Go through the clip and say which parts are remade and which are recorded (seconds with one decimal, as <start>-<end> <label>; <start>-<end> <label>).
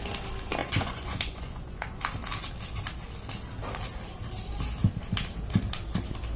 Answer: 0.0-0.6 recorded; 0.6-2.0 remade; 2.0-6.4 recorded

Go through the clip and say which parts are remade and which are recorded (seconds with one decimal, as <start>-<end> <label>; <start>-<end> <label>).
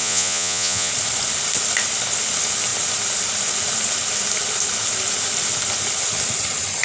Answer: 0.0-0.9 remade; 0.9-6.8 recorded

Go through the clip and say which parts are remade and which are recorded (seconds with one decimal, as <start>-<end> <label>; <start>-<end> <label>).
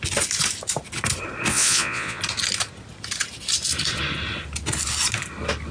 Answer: 0.0-1.5 recorded; 1.5-2.2 remade; 2.2-5.7 recorded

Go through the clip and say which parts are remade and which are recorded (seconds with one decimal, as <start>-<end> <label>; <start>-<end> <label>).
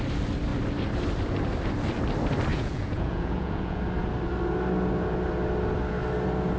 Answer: 0.0-2.5 recorded; 2.5-3.8 remade; 3.8-6.6 recorded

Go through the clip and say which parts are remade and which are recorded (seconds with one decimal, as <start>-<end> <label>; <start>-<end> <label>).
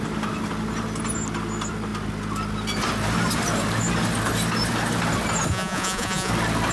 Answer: 0.0-5.5 recorded; 5.5-6.3 remade; 6.3-6.7 recorded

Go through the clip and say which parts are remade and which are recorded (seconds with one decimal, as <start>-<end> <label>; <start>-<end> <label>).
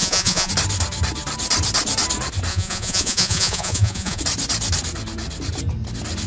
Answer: 0.0-0.5 remade; 0.5-2.5 recorded; 2.5-4.2 remade; 4.2-6.3 recorded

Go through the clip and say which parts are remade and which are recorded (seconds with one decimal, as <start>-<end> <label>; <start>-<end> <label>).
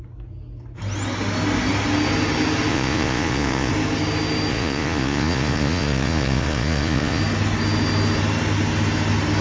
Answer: 0.0-2.7 recorded; 2.7-3.7 remade; 3.7-4.5 recorded; 4.5-7.2 remade; 7.2-9.4 recorded